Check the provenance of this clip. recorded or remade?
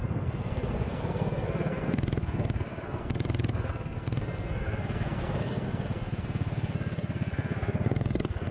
remade